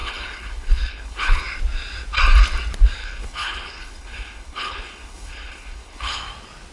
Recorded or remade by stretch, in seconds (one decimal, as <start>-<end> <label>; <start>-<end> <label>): 0.0-1.4 remade; 1.4-3.0 recorded; 3.0-6.2 remade; 6.2-6.7 recorded